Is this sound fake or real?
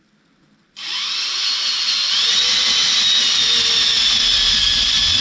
real